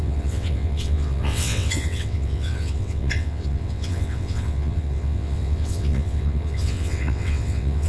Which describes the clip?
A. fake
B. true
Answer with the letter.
A